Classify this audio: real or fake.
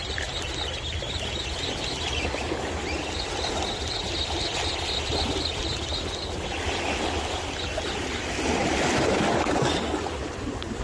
real